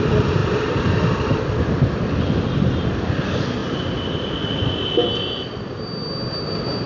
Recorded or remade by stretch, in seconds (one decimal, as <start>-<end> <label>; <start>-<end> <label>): 0.0-6.9 recorded